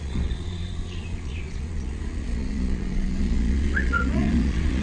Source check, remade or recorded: remade